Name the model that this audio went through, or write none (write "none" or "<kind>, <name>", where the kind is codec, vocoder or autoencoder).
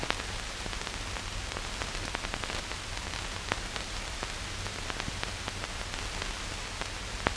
none